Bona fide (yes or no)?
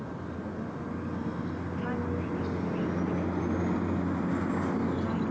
yes